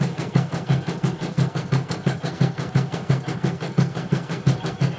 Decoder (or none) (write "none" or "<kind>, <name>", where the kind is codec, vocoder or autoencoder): codec, SNAC